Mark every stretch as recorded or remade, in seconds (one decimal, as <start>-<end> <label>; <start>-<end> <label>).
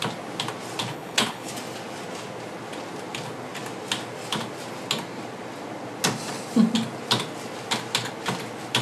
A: 0.0-0.9 recorded; 0.9-1.5 remade; 1.5-8.8 recorded